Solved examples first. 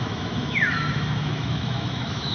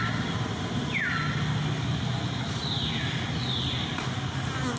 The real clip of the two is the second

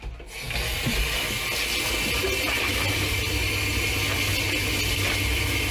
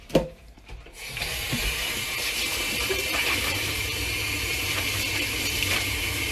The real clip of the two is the first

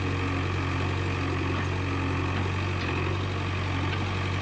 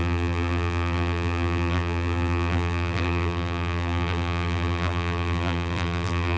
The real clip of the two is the first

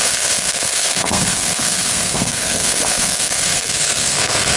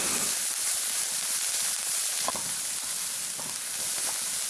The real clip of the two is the second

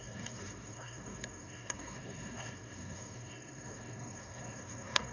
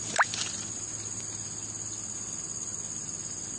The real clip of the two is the second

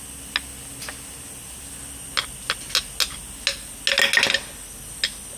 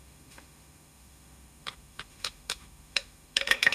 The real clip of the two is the first